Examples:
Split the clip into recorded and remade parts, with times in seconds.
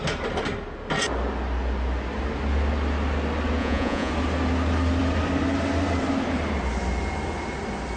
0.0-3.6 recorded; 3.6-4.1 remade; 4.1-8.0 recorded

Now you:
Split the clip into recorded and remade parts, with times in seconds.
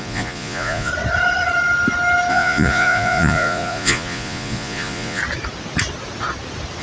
0.0-0.9 remade; 0.9-2.3 recorded; 2.3-5.2 remade; 5.2-6.8 recorded